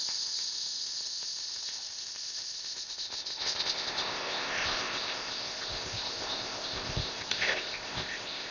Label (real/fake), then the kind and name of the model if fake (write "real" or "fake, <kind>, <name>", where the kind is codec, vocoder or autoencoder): fake, codec, ZipCodec